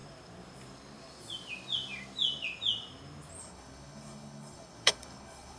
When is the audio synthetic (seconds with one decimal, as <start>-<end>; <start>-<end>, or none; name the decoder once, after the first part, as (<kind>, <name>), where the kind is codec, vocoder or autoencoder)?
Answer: 3.4-5.6 (codec, HILCodec)